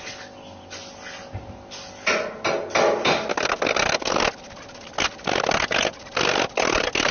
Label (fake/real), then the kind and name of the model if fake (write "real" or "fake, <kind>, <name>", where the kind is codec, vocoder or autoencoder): real